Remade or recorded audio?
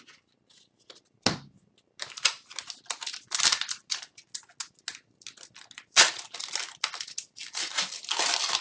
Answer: recorded